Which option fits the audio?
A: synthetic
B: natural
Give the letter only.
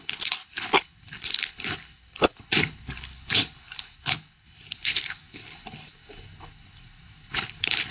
A